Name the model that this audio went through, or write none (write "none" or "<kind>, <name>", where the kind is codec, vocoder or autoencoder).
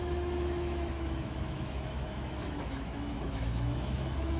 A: autoencoder, DAC-VAE